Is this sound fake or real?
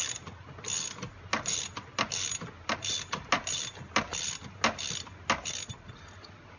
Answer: real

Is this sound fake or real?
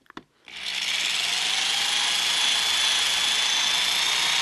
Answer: real